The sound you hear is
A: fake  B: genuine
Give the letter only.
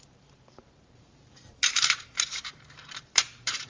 A